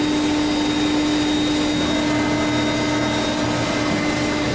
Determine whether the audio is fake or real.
real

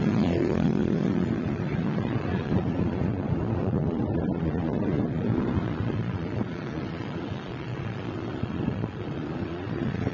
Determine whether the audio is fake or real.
fake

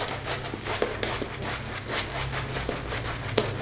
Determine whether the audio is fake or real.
real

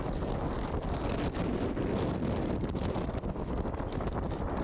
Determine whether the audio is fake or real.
real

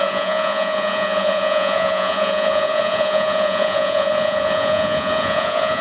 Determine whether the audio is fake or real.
fake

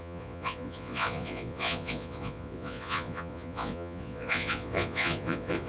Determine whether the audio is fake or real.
fake